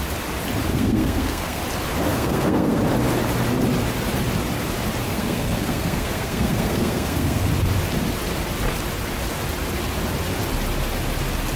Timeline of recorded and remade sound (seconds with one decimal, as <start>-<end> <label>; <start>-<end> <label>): 0.0-0.7 recorded; 0.7-1.6 remade; 1.6-2.1 recorded; 2.1-2.8 remade; 2.8-5.1 recorded; 5.1-7.5 remade; 7.5-11.6 recorded